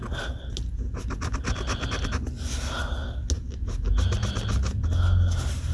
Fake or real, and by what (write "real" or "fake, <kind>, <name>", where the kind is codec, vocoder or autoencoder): real